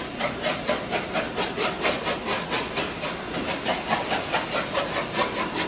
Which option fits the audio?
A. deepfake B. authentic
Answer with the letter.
B